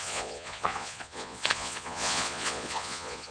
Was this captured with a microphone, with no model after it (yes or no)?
no